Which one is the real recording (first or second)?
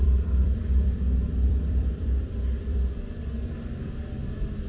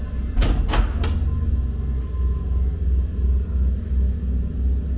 second